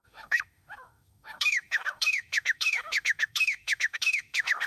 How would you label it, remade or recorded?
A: remade